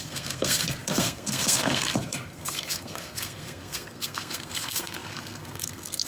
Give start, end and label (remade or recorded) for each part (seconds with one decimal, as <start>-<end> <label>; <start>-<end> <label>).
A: 0.0-6.1 remade